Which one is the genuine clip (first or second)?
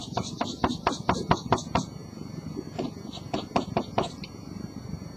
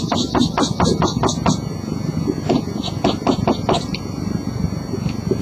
second